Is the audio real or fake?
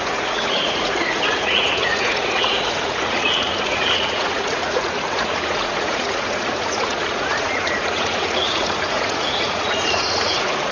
fake